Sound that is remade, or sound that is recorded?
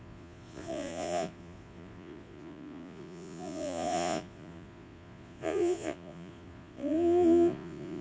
remade